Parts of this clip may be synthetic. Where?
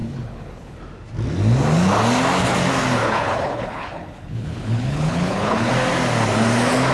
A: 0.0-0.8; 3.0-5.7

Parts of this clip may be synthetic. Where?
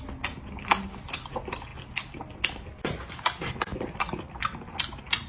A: none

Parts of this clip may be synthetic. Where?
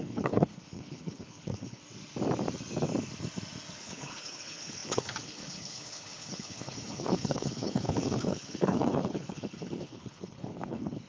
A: 0.0-1.8; 3.8-11.1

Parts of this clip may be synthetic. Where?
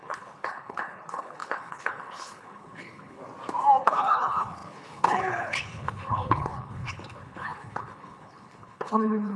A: 0.0-3.2; 3.8-9.4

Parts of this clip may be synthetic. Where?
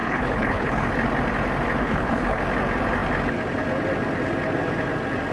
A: 0.0-0.9; 1.8-2.4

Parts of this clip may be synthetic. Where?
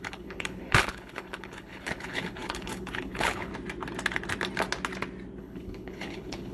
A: 0.0-3.5; 5.4-6.5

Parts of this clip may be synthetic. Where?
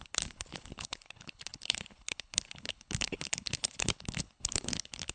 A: 0.0-5.1